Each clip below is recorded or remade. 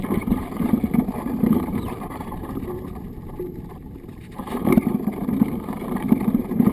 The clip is remade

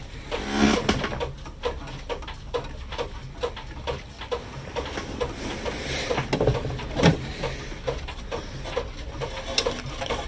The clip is recorded